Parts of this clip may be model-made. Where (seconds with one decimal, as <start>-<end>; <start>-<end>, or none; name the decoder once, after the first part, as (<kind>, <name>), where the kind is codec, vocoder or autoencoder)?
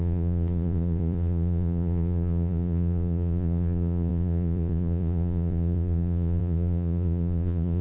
0.0-7.8 (vocoder, Vocos)